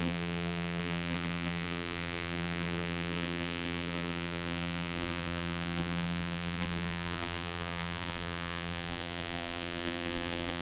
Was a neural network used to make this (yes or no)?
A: yes